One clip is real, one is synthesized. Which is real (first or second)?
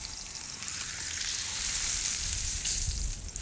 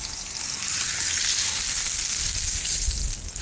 second